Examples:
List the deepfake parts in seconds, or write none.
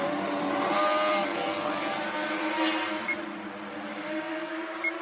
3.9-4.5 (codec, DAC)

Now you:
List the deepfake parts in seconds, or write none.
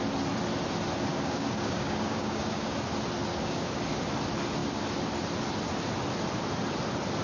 1.1-2.9 (codec, DAC); 3.3-3.8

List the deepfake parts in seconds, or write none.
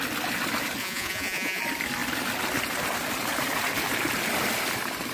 0.8-1.6 (vocoder, Vocos)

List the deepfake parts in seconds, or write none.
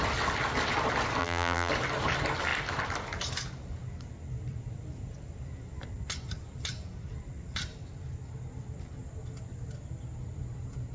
1.2-1.7 (vocoder, BigVGAN v2)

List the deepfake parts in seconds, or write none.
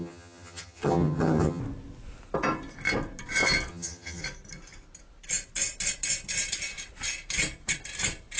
0.0-1.6 (vocoder, HiFi-GAN); 3.7-4.2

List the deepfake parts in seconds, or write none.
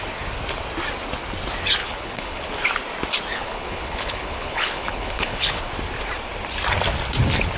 1.8-2.5 (codec, HILCodec); 3.3-5.7